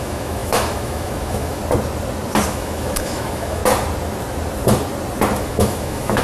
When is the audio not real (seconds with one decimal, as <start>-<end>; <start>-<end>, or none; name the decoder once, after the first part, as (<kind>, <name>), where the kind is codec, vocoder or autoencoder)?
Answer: 0.0-1.6 (autoencoder, DAC-VAE); 2.5-3.6; 5.4-6.2